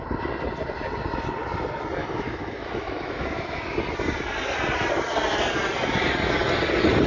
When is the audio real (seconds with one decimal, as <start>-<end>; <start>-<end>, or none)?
0.0-2.0; 3.6-7.1